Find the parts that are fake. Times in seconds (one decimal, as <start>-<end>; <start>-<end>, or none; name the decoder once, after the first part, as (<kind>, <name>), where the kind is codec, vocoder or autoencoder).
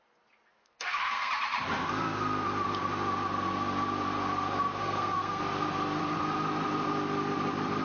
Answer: 0.6-1.3 (codec, SNAC); 4.8-5.4